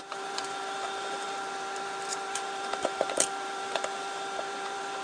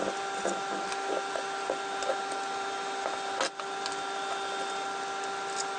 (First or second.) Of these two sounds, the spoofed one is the first